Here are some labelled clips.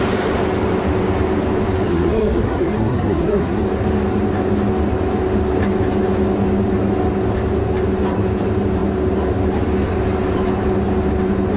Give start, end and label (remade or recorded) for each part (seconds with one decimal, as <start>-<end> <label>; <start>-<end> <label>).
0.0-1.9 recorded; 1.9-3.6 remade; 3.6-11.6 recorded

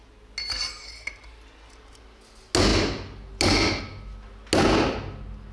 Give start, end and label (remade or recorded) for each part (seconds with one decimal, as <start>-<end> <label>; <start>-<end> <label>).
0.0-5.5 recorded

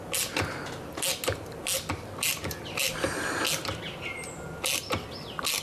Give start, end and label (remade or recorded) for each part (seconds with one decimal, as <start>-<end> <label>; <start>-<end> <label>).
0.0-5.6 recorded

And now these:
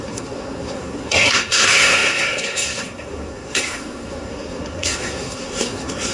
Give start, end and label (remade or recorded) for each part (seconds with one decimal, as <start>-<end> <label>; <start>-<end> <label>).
0.0-6.1 remade